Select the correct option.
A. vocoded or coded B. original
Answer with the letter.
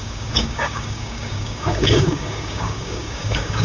A